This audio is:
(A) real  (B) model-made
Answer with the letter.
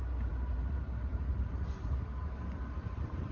B